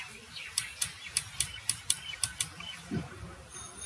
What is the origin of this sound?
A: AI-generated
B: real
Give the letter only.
B